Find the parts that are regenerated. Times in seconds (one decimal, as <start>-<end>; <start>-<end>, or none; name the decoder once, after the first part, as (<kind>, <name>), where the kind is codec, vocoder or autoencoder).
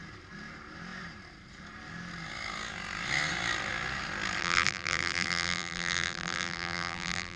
4.4-7.4 (vocoder, BigVGAN v2)